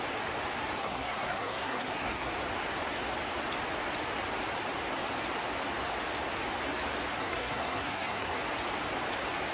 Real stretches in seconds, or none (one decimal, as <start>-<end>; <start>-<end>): 0.0-0.8; 2.3-7.2; 8.4-9.5